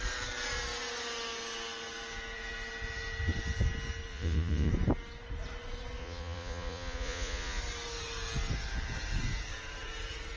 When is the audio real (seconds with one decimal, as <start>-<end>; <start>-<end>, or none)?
0.0-4.1; 4.7-6.0; 7.6-10.4